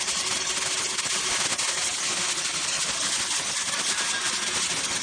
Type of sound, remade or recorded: recorded